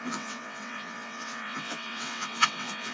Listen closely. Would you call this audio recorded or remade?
remade